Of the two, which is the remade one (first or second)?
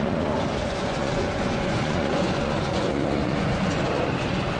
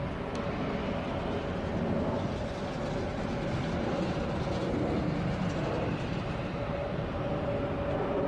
first